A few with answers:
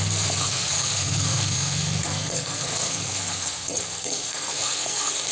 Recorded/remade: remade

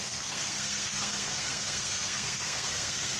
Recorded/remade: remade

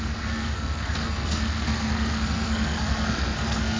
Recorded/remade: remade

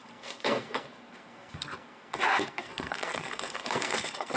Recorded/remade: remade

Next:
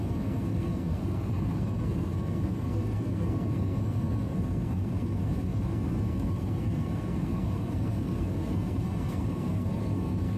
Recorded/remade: remade